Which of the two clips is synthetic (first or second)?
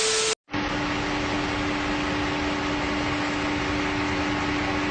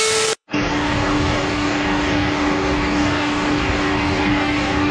second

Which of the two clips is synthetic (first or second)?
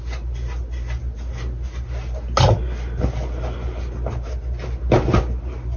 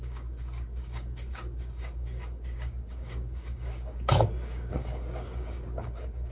second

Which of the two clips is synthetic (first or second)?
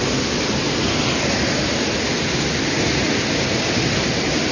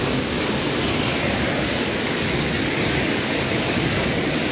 second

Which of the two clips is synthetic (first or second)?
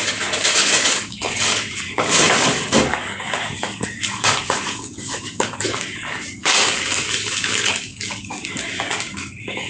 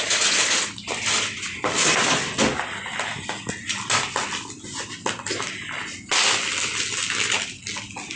first